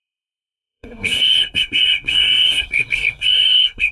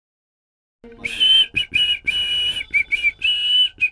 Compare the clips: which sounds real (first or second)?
second